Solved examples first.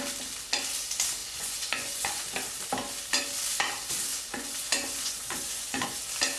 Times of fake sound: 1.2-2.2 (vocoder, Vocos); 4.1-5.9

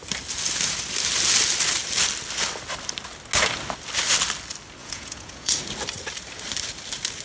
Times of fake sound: 4.8-5.5 (vocoder, Vocos)

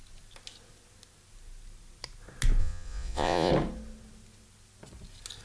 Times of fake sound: 2.6-3.5 (vocoder, Vocos)

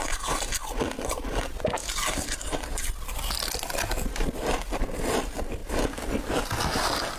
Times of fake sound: none

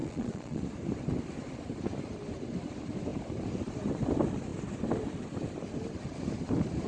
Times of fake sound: 0.0-0.6 (vocoder, Vocos)

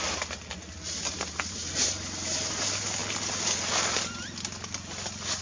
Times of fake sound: none